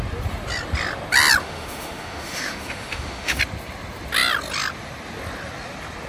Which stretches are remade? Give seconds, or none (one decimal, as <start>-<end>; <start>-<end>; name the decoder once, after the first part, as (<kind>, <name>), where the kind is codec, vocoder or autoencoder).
1.4-3.4 (autoencoder, DAC-VAE)